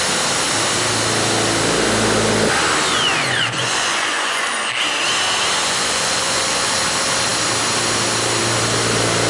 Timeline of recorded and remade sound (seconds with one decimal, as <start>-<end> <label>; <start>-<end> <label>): 0.0-2.9 recorded; 2.9-4.7 remade; 4.7-5.6 recorded; 5.6-6.8 remade; 6.8-9.3 recorded